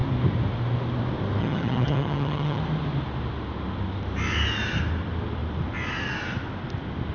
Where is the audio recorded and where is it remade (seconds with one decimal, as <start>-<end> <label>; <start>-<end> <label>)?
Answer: 0.0-1.4 recorded; 1.4-2.6 remade; 2.6-7.1 recorded

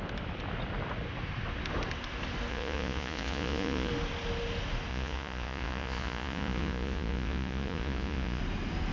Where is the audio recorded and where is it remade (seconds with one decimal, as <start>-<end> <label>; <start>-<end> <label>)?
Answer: 0.0-2.5 recorded; 2.5-3.9 remade; 3.9-4.9 recorded; 4.9-8.4 remade; 8.4-8.9 recorded